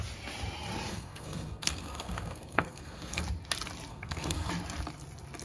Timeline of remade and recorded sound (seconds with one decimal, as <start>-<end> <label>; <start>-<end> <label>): 0.0-0.9 recorded; 0.9-3.2 remade; 3.2-3.9 recorded; 3.9-4.5 remade; 4.5-5.4 recorded